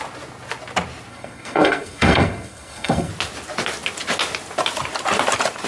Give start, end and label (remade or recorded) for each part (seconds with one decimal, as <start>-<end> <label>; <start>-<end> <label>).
0.0-1.1 recorded; 1.1-3.1 remade; 3.1-5.7 recorded